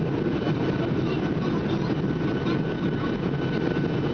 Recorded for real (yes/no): no